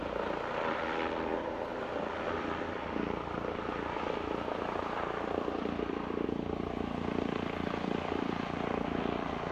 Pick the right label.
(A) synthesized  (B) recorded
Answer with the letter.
A